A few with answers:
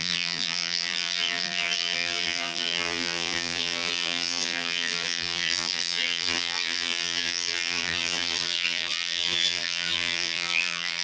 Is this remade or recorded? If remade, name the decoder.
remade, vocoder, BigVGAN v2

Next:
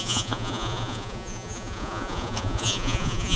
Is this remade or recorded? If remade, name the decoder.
remade, vocoder, Vocos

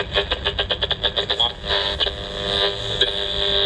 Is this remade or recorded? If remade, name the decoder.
recorded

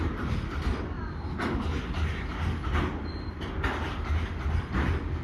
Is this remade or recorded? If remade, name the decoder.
recorded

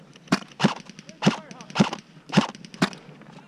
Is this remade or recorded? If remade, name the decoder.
recorded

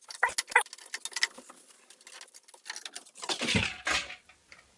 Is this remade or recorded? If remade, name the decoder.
recorded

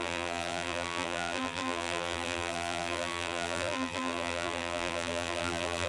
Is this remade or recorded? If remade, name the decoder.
remade, vocoder, BigVGAN v2